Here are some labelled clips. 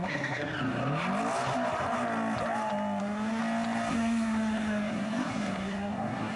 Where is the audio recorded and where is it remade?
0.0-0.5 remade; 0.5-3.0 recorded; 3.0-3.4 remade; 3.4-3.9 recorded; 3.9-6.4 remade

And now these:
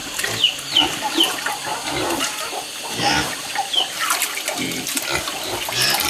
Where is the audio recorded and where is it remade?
0.0-6.1 recorded

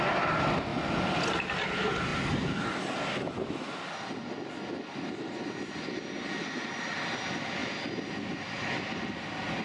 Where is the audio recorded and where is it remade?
0.0-0.7 remade; 0.7-1.2 recorded; 1.2-2.1 remade; 2.1-5.9 recorded; 5.9-7.6 remade; 7.6-8.1 recorded; 8.1-9.6 remade

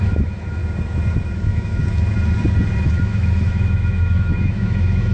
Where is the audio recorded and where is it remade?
0.0-0.6 remade; 0.6-1.3 recorded; 1.3-1.8 remade; 1.8-2.9 recorded; 2.9-5.1 remade

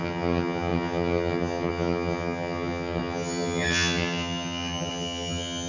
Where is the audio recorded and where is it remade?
0.0-5.7 remade

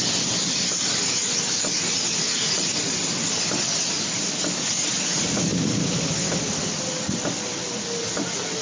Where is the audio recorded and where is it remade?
0.0-8.6 recorded